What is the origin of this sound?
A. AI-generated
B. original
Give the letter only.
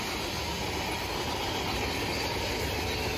B